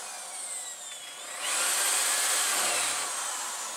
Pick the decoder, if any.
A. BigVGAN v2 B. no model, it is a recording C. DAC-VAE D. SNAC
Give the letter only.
B